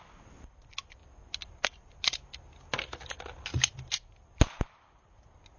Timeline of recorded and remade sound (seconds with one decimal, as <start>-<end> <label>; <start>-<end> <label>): 0.0-5.6 recorded